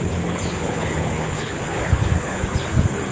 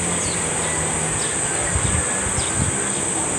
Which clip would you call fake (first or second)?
first